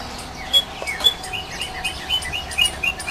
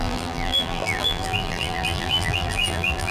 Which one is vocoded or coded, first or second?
second